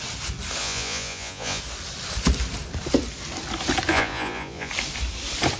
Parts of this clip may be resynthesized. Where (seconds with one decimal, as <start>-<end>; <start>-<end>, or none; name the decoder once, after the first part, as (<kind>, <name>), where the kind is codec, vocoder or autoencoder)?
0.6-1.6 (vocoder, Vocos); 3.9-4.7